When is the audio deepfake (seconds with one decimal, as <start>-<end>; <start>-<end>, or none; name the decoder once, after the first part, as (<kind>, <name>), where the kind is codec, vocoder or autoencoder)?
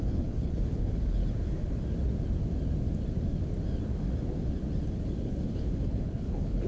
0.0-1.2 (codec, HILCodec); 5.2-6.7